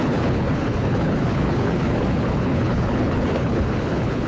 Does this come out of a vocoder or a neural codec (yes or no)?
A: yes